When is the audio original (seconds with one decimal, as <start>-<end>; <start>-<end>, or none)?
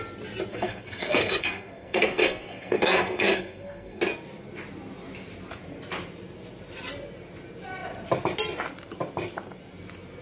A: 0.0-0.5; 4.0-10.2